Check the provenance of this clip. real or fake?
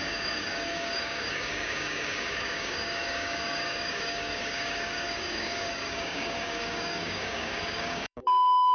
fake